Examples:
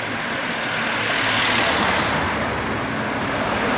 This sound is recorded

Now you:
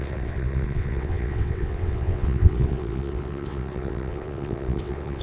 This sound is remade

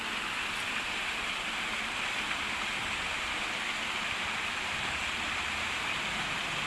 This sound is recorded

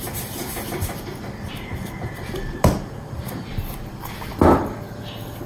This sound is recorded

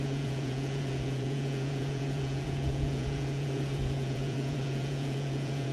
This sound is remade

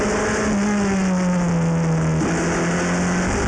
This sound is recorded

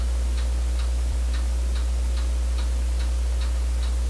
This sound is recorded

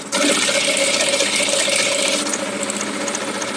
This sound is recorded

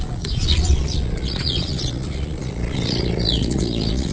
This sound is remade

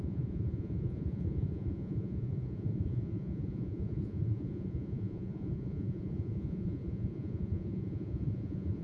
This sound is remade